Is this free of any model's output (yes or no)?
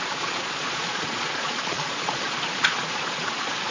no